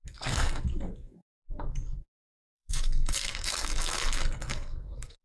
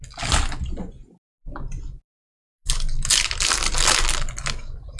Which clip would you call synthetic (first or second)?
first